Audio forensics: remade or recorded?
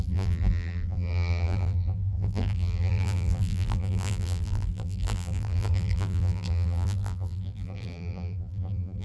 remade